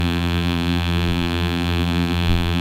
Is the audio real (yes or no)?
no